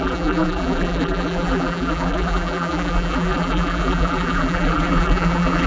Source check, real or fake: fake